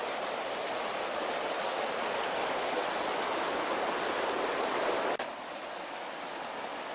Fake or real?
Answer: real